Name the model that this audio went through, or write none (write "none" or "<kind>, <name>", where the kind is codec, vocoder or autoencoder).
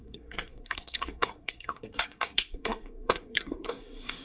codec, SNAC